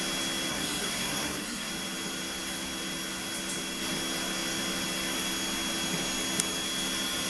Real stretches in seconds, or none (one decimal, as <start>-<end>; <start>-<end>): 0.0-0.5; 1.7-7.3